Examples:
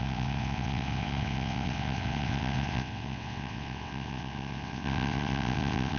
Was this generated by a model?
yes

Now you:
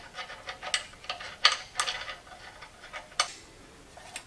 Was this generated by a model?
no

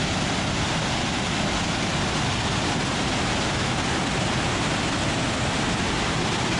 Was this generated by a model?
no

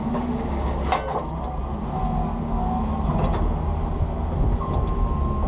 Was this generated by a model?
no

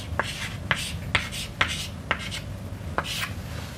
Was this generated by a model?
no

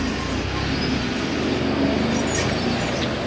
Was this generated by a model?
no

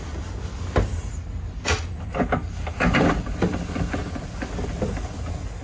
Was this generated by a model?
no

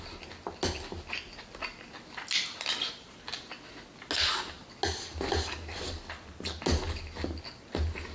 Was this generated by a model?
no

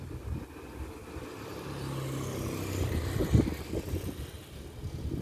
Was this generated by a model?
no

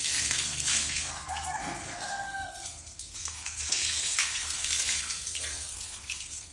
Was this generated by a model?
yes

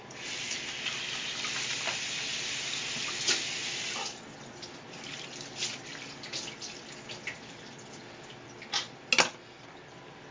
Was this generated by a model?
no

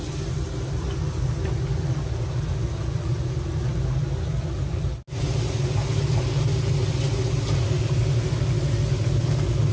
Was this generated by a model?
no